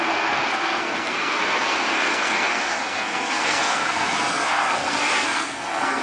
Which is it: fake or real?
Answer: fake